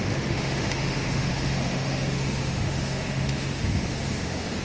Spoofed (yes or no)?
yes